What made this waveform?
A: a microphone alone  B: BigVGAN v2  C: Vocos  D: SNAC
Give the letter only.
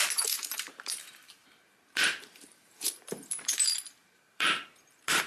B